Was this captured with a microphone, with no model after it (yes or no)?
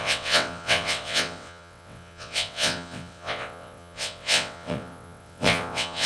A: no